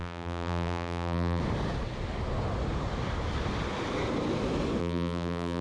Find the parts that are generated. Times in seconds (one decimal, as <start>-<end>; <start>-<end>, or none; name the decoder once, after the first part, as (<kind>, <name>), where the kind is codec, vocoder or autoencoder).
0.0-1.4 (vocoder, BigVGAN v2); 4.8-5.6

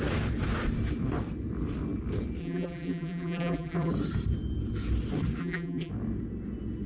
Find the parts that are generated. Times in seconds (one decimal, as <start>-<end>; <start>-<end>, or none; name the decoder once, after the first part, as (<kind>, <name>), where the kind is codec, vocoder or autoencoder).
2.4-3.9 (vocoder, BigVGAN v2); 5.4-5.9

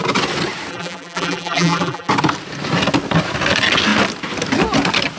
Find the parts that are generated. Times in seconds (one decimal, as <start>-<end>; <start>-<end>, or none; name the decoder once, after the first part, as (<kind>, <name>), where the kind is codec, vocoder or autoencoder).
0.7-2.1 (vocoder, BigVGAN v2)

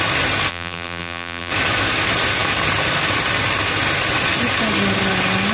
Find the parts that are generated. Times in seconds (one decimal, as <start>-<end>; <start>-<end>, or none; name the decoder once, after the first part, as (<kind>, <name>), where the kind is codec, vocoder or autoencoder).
0.5-1.5 (vocoder, BigVGAN v2)

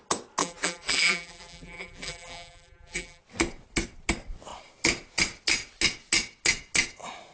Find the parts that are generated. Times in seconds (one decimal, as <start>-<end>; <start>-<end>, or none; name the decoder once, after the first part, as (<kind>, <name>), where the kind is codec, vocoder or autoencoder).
0.4-3.2 (vocoder, BigVGAN v2)

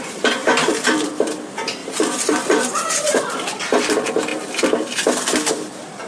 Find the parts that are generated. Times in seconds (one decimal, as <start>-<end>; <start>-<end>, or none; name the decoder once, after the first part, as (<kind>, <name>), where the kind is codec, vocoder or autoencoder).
0.4-1.3 (vocoder, BigVGAN v2); 1.8-3.2